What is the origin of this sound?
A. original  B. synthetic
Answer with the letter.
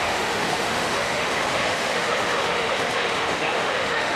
B